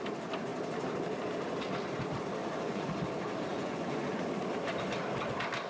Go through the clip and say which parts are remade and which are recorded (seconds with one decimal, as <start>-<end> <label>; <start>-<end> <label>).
0.0-2.4 recorded; 2.4-2.9 remade; 2.9-3.5 recorded; 3.5-4.2 remade; 4.2-5.7 recorded